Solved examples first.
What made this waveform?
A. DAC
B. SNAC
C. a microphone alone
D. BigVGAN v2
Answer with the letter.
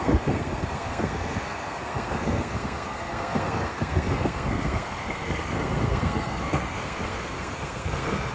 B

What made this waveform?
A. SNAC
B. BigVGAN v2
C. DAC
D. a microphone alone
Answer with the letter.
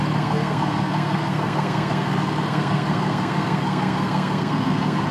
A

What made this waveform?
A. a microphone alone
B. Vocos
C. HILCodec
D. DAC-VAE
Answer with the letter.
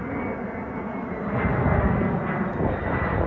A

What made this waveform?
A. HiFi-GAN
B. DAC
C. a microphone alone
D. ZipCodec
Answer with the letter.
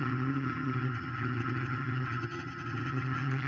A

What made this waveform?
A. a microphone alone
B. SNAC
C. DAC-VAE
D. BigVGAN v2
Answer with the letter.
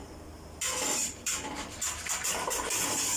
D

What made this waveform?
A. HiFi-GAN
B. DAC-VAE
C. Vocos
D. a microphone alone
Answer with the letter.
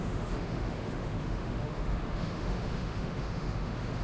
B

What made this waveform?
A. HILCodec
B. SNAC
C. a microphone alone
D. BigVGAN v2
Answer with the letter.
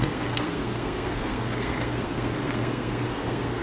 B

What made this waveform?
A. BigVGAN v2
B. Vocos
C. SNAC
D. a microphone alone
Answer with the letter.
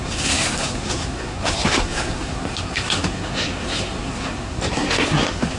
C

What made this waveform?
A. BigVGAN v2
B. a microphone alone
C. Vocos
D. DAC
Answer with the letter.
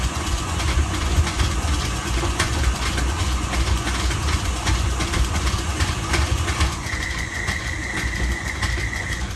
C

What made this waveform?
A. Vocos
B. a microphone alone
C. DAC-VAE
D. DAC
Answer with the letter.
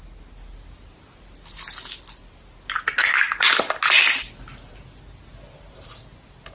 B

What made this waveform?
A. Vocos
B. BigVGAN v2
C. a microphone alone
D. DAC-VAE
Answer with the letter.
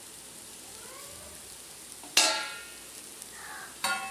C